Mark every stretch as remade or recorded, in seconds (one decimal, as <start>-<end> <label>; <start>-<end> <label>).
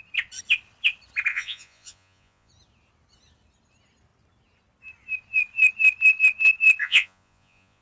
0.0-1.3 recorded; 1.3-2.5 remade; 2.5-6.8 recorded; 6.8-7.8 remade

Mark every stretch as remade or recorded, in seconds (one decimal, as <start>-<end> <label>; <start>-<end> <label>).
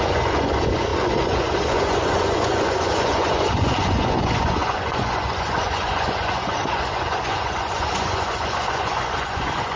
0.0-9.8 remade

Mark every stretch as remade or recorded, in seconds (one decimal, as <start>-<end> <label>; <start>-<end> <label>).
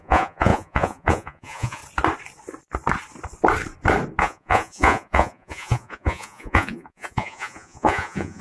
0.0-1.8 remade; 1.8-4.2 recorded; 4.2-8.4 remade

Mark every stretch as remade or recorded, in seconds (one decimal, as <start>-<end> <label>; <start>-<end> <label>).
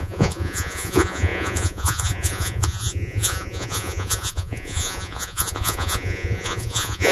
0.0-7.1 remade